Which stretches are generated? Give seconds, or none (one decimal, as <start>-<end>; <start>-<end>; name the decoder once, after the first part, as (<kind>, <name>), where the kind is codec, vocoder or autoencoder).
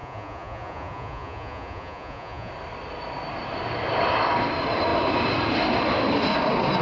0.0-2.5 (vocoder, Vocos)